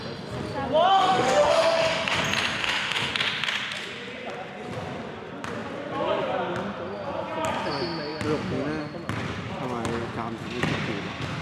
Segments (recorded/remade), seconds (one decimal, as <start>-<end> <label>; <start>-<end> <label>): 0.0-0.9 recorded; 0.9-2.2 remade; 2.2-2.6 recorded; 2.6-3.1 remade; 3.1-11.4 recorded

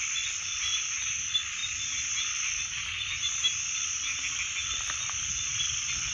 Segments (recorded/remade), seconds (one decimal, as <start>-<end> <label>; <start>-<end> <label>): 0.0-6.1 recorded

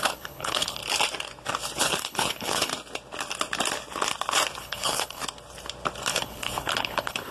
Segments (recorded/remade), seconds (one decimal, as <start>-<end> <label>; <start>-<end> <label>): 0.0-0.8 remade; 0.8-1.8 recorded; 1.8-2.7 remade; 2.7-4.6 recorded; 4.6-5.2 remade; 5.2-6.1 recorded; 6.1-7.3 remade